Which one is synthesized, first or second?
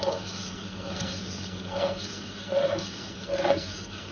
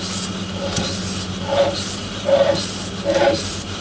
first